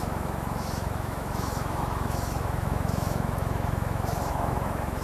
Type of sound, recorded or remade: remade